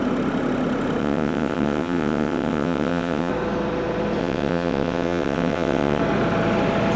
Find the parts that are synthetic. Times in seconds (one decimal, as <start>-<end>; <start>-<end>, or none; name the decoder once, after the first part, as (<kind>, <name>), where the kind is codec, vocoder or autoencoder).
1.0-3.3 (vocoder, WaveNeXt); 4.2-6.0